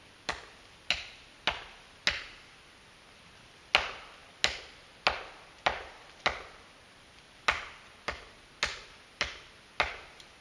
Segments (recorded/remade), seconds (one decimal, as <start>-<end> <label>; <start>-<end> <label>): 0.0-10.4 recorded